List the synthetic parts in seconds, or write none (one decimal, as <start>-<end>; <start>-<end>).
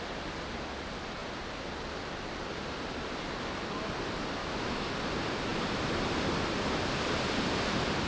4.4-4.9